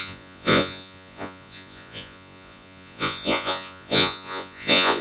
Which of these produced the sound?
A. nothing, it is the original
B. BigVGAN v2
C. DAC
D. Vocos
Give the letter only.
D